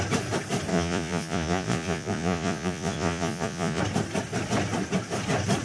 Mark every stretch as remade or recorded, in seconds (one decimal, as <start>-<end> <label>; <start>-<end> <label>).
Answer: 0.0-0.7 recorded; 0.7-3.8 remade; 3.8-5.6 recorded